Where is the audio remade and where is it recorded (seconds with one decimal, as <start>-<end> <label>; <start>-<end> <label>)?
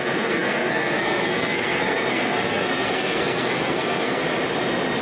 0.0-4.2 remade; 4.2-5.0 recorded